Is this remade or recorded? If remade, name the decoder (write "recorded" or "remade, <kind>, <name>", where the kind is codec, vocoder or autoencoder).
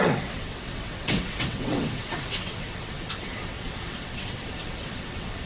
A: remade, vocoder, WaveNeXt